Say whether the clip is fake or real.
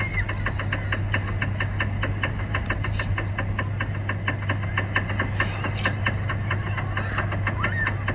real